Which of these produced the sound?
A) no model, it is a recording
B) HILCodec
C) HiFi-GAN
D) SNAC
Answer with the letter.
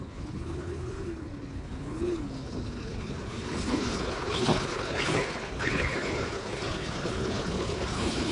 B